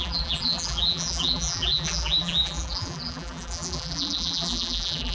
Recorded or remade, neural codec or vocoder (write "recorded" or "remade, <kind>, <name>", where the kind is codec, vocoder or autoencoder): remade, vocoder, BigVGAN v2